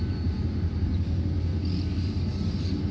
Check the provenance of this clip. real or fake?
real